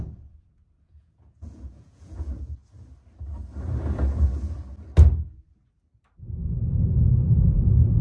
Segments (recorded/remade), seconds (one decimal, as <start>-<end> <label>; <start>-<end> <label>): 0.0-2.6 remade; 2.6-7.4 recorded; 7.4-8.0 remade